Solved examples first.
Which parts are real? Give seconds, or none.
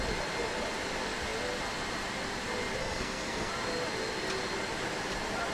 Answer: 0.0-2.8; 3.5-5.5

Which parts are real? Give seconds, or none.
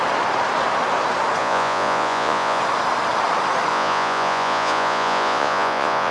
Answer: 0.0-1.4; 2.6-3.7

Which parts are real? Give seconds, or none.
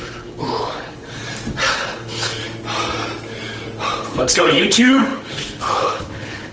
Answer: 1.2-1.7; 2.4-4.0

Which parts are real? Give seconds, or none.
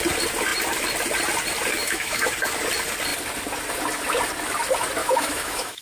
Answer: 0.0-1.8; 2.3-5.0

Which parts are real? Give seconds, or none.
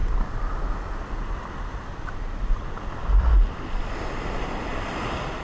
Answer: 0.0-5.4